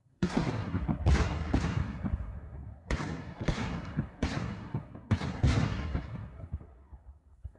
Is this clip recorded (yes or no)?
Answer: no